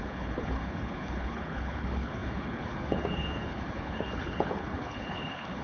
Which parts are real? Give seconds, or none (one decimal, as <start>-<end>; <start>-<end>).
none